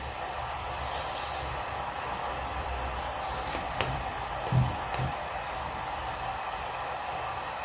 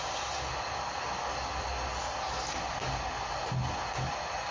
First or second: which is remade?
first